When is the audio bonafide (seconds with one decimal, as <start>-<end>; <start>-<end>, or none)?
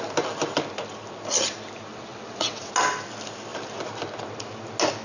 0.0-1.9; 2.7-5.0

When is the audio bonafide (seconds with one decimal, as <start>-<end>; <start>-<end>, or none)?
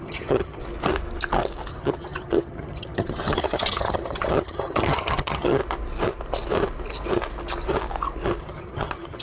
0.6-1.7; 5.6-8.4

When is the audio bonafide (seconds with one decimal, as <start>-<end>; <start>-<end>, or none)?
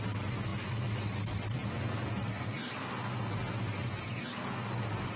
0.0-5.2